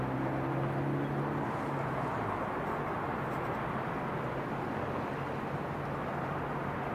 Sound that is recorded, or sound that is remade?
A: recorded